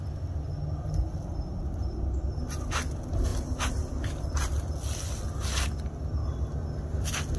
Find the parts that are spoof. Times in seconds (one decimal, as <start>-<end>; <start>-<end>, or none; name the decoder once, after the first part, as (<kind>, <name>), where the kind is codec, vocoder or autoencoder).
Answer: none